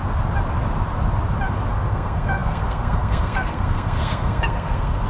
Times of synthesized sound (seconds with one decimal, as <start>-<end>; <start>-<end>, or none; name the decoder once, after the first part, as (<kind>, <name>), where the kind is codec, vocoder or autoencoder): 1.7-5.1 (codec, SNAC)